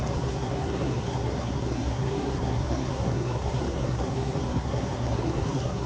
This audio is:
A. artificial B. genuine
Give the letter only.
A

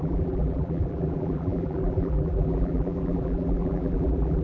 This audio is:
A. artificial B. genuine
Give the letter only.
A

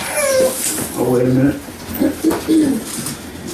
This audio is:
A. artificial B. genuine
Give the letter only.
B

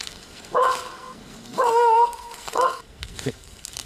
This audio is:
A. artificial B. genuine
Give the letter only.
A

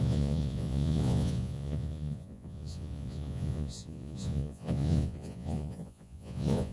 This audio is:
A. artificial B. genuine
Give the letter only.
A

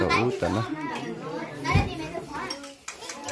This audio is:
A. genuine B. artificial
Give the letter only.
A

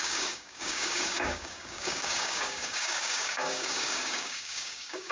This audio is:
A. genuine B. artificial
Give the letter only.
B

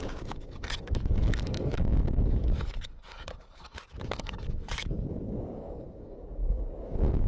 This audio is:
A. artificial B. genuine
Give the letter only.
A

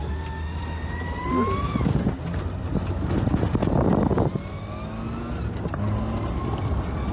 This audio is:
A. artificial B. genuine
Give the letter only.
B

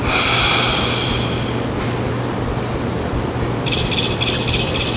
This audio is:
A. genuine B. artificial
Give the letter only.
A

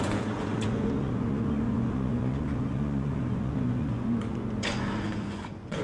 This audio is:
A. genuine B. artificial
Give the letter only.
B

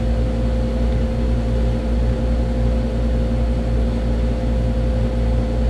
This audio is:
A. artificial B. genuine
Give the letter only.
B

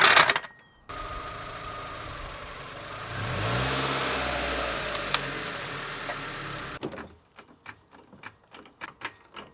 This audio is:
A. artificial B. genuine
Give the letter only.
B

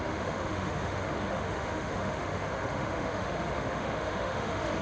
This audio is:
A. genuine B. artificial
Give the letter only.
B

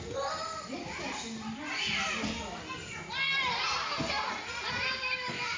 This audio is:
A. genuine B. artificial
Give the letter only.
A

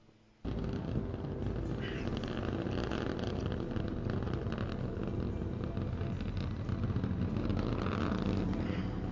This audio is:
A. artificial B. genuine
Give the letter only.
B